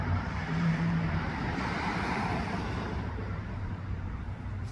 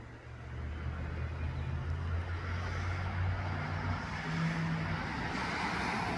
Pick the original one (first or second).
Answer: second